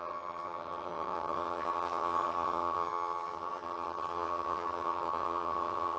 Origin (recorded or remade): remade